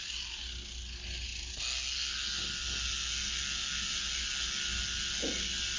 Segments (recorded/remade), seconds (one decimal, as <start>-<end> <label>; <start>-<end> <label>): 0.0-5.8 recorded